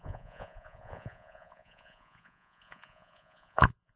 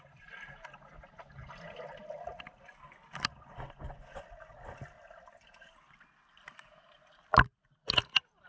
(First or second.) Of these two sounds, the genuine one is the second